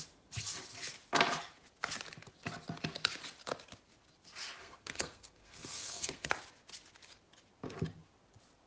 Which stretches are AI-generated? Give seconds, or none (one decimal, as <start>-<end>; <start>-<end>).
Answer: 4.6-6.3